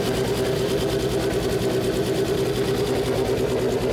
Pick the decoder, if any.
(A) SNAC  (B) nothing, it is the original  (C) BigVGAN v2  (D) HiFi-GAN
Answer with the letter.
B